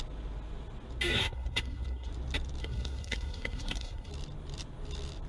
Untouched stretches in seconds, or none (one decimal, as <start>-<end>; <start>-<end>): 0.0-1.2; 2.1-2.6; 4.1-5.3